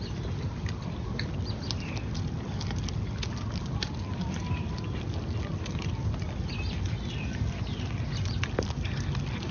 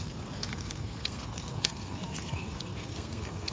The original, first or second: first